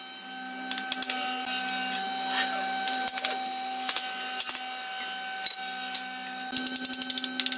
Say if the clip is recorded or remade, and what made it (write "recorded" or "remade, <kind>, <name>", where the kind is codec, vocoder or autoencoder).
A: recorded